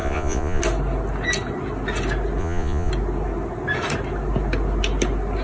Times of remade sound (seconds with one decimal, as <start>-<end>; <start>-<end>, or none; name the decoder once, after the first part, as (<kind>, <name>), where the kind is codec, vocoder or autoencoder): 0.0-0.6 (vocoder, Vocos); 2.4-2.9